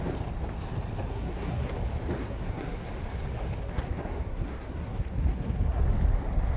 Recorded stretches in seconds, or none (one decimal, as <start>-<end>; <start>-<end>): 0.0-1.1; 1.7-2.2; 2.9-3.6; 5.8-6.6